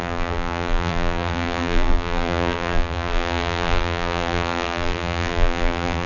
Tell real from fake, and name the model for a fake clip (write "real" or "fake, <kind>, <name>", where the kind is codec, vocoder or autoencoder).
fake, vocoder, BigVGAN v2